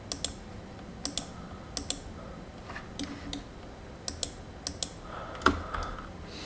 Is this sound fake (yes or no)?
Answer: no